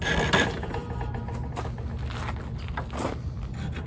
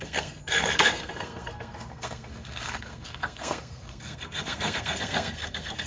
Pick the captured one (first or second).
first